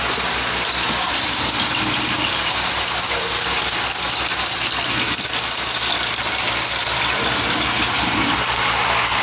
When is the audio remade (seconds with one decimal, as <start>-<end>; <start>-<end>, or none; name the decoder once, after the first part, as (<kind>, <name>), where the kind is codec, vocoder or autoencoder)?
none